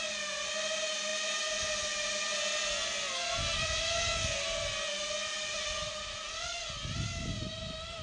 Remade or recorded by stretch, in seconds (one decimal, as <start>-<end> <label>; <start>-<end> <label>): 0.0-8.0 recorded